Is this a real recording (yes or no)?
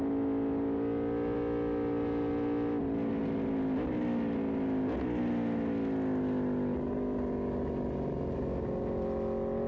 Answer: yes